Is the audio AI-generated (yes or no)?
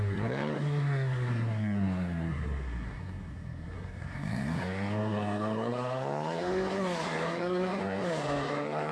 yes